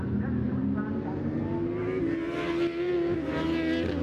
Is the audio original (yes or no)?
yes